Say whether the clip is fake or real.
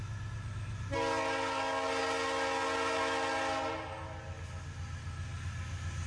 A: real